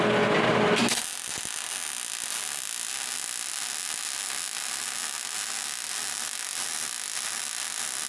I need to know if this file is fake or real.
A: real